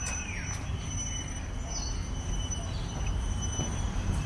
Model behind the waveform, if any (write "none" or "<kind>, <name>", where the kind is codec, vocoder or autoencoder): none